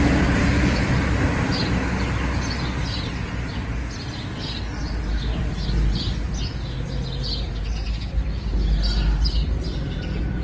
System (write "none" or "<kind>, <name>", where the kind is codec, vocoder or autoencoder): none